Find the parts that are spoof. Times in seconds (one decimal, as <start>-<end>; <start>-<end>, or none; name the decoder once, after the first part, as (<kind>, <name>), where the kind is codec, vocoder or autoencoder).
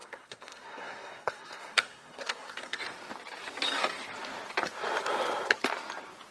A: 0.0-2.8 (codec, SNAC)